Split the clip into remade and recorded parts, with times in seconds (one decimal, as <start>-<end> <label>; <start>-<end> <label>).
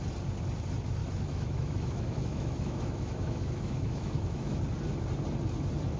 0.0-1.0 recorded; 1.0-4.6 remade; 4.6-6.0 recorded